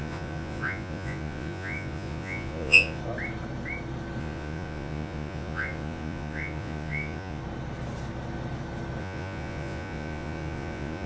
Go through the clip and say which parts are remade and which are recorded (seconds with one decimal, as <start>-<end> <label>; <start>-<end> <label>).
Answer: 0.0-3.0 remade; 3.0-4.2 recorded; 4.2-7.4 remade; 7.4-9.0 recorded; 9.0-11.1 remade